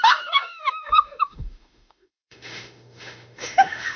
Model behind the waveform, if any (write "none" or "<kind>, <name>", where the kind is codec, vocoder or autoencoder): autoencoder, DAC-VAE